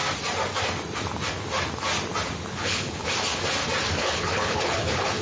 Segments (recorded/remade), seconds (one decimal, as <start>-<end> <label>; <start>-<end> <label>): 0.0-2.6 recorded; 2.6-3.1 remade; 3.1-4.0 recorded; 4.0-5.2 remade